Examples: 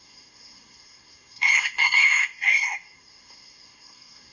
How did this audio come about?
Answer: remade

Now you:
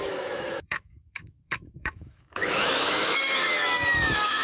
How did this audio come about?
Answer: remade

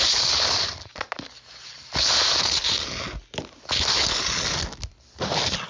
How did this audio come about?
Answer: recorded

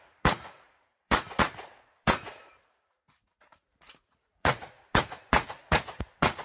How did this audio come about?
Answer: remade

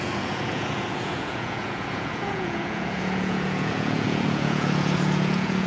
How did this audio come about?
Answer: remade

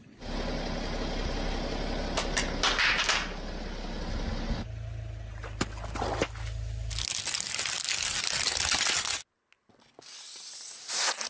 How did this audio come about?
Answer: recorded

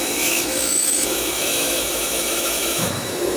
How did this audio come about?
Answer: remade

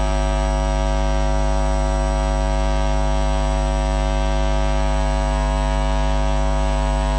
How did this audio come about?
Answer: recorded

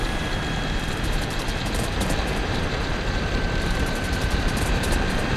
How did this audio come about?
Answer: remade